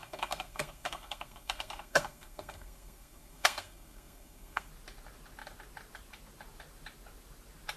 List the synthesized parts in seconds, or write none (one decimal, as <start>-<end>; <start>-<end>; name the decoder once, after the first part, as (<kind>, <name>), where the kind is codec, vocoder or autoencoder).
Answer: 0.0-4.7 (codec, SNAC)